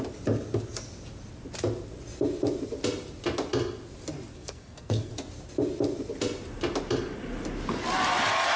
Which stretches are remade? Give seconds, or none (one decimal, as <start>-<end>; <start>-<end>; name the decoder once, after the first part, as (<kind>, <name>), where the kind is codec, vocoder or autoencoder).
4.3-5.1 (codec, SNAC)